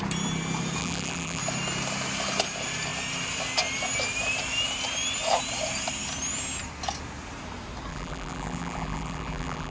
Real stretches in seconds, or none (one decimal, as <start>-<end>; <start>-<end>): 0.0-0.8; 1.4-7.9